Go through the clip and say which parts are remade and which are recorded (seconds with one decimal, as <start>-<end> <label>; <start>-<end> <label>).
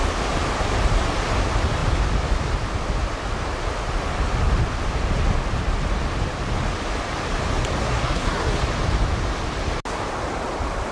0.0-7.8 recorded; 7.8-8.6 remade; 8.6-10.9 recorded